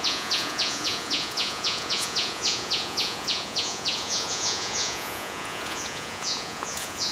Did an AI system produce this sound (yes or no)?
yes